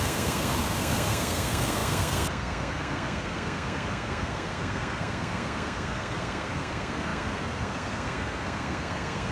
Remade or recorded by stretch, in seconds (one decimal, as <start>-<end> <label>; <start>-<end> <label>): 0.0-9.3 remade